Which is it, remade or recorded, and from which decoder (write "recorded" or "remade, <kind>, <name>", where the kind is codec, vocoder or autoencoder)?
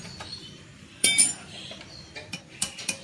remade, vocoder, BigVGAN v2